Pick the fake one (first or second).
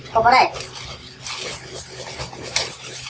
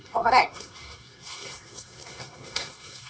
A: second